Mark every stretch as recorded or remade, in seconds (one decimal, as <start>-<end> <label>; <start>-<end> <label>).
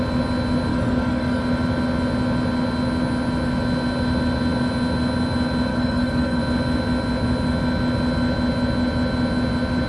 0.0-0.7 recorded; 0.7-1.4 remade; 1.4-5.7 recorded; 5.7-6.4 remade; 6.4-9.9 recorded